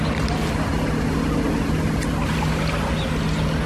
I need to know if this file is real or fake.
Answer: real